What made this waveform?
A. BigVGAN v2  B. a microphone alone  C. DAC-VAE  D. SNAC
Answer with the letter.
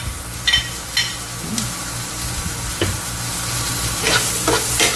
B